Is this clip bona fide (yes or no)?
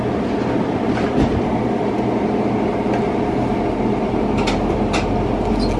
yes